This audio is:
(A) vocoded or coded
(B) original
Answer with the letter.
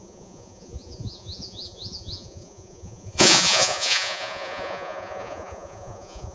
A